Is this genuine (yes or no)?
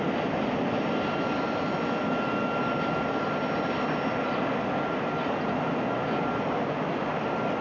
yes